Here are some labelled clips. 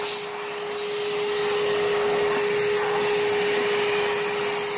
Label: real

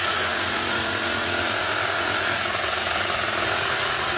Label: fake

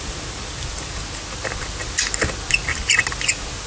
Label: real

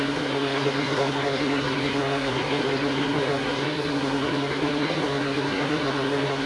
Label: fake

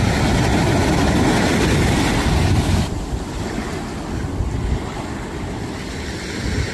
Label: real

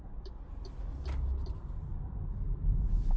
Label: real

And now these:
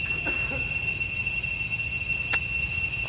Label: real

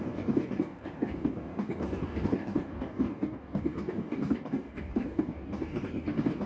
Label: fake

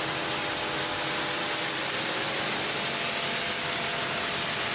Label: real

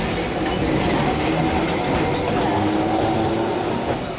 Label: real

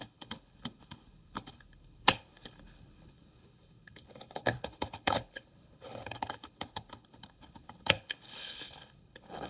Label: fake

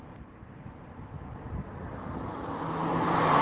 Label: fake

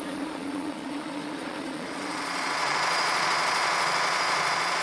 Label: fake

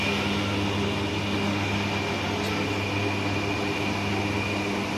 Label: real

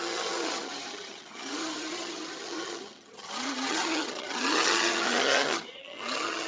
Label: fake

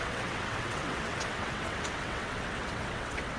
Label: fake